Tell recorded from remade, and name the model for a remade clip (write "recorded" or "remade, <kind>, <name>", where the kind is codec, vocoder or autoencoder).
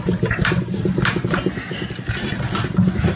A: recorded